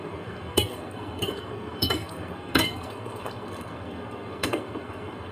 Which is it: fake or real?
fake